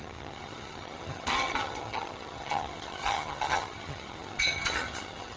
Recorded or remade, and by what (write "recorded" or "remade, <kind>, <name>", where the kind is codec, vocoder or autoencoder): remade, vocoder, HiFi-GAN